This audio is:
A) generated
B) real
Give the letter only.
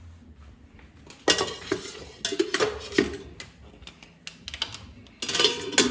B